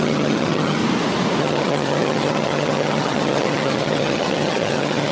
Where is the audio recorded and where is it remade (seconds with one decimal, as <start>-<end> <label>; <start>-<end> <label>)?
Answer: 0.0-0.8 remade; 0.8-1.4 recorded; 1.4-5.1 remade